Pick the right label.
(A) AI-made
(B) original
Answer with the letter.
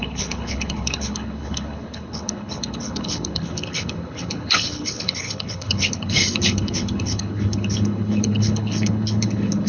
A